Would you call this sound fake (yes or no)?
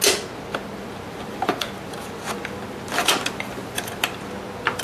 no